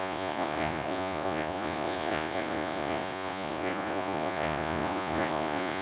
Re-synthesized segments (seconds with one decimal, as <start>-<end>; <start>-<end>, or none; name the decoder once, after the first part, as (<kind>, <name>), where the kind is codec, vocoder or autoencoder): 0.0-5.8 (vocoder, Vocos)